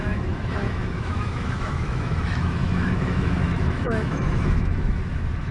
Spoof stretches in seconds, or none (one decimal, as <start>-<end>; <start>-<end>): 0.0-5.5